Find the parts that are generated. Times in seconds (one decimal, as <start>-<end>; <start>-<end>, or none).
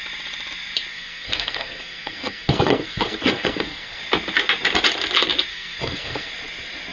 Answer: 0.9-4.0; 5.5-6.3